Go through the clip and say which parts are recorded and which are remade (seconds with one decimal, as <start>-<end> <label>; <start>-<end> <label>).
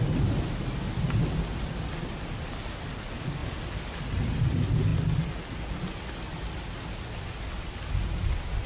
0.0-8.7 recorded